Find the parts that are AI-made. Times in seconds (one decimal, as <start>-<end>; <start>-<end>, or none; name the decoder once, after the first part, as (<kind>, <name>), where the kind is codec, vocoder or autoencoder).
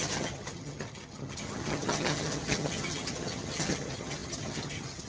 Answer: 0.0-5.1 (vocoder, HiFi-GAN)